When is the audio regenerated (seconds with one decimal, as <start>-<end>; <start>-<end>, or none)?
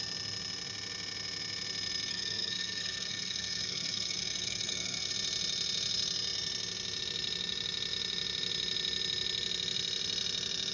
2.1-5.1